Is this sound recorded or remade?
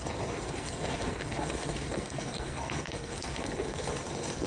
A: remade